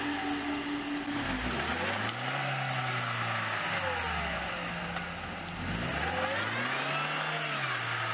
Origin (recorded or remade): recorded